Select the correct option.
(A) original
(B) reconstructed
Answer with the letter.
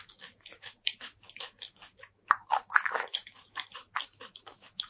B